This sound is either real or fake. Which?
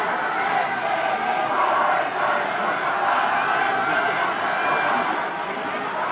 real